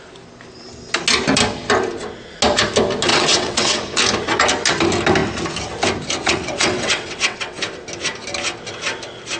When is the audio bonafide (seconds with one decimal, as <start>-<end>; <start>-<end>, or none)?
0.0-3.1; 3.8-6.2; 7.6-9.4

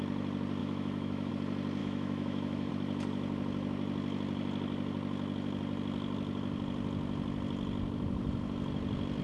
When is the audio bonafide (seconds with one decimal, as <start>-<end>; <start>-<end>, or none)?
0.0-0.6; 1.3-1.8; 2.7-9.2

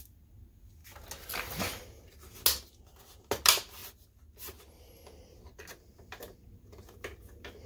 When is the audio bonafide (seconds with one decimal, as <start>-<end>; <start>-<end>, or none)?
0.0-7.7

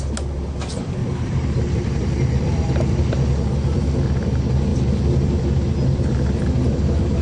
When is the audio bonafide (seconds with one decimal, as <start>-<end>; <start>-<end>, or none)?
0.0-1.0; 3.1-7.2

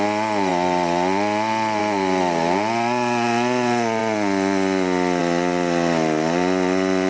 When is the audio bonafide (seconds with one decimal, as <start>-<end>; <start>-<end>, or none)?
0.0-7.1

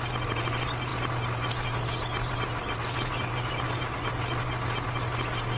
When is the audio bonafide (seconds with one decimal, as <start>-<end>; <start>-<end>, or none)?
0.0-5.6

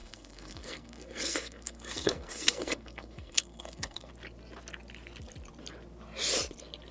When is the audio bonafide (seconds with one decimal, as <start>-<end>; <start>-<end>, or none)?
4.1-6.9